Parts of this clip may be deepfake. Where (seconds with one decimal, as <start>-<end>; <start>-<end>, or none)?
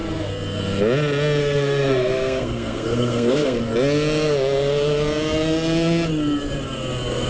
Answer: 1.4-3.6